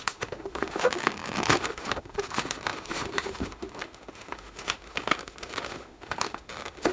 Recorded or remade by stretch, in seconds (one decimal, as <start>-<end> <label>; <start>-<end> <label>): 0.0-6.9 remade